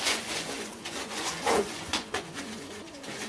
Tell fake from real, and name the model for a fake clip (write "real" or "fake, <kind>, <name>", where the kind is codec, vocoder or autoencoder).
fake, vocoder, Vocos